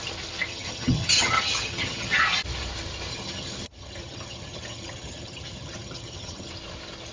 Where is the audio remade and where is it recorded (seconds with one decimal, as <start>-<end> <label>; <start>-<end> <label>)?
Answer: 0.0-0.5 recorded; 0.5-2.2 remade; 2.2-3.1 recorded; 3.1-6.5 remade; 6.5-7.1 recorded